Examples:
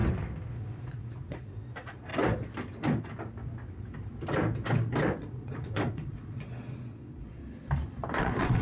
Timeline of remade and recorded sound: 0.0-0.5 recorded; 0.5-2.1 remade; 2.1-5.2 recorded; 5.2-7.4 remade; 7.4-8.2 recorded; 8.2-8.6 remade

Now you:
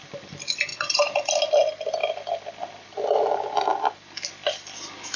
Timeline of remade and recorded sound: 0.0-0.7 recorded; 0.7-1.3 remade; 1.3-5.2 recorded

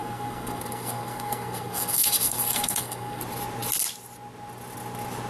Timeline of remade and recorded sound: 0.0-3.2 remade; 3.2-5.3 recorded

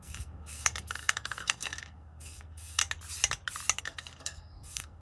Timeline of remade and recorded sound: 0.0-2.8 remade; 2.8-3.8 recorded; 3.8-5.0 remade

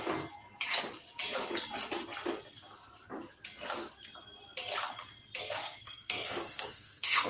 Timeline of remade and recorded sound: 0.0-5.6 recorded; 5.6-7.3 remade

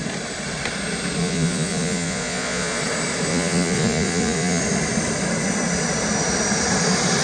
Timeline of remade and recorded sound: 0.0-1.2 recorded; 1.2-2.8 remade; 2.8-3.3 recorded; 3.3-4.6 remade; 4.6-7.2 recorded